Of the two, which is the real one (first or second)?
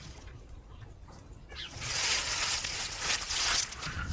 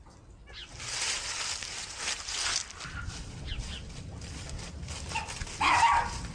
second